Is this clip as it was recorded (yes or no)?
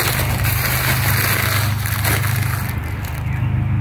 yes